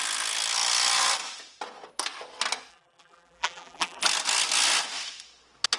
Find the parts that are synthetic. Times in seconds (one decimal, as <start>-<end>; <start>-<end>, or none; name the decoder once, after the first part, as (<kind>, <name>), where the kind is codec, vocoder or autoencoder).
2.7-4.0 (vocoder, BigVGAN v2)

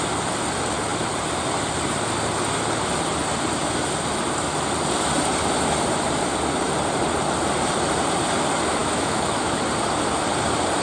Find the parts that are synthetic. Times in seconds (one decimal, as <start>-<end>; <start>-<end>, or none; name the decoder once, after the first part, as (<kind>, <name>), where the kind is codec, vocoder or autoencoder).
8.8-9.6 (autoencoder, DAC-VAE)

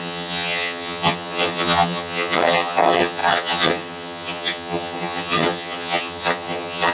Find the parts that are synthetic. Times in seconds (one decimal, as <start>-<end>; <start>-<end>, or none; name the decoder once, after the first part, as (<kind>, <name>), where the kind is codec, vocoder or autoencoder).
0.0-6.9 (vocoder, HiFi-GAN)

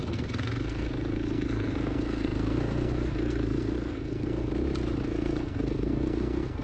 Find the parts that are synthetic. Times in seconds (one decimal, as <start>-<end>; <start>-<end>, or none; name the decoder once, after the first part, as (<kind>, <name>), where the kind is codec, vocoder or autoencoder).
0.0-4.5 (codec, SNAC); 5.0-6.6